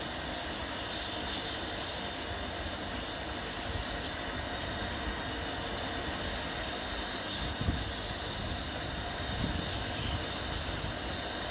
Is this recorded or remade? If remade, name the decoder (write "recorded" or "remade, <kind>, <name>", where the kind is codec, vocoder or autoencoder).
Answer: recorded